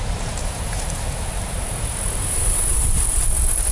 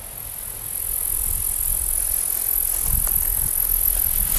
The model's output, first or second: first